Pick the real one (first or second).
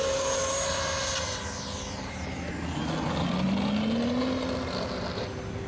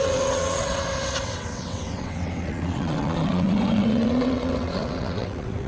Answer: first